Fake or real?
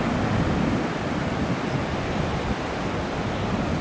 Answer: real